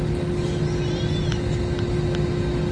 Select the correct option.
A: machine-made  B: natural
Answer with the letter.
B